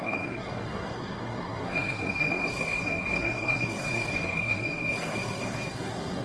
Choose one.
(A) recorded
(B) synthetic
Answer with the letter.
B